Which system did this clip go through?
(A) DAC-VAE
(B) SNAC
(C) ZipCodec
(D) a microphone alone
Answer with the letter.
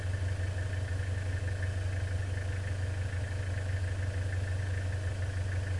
D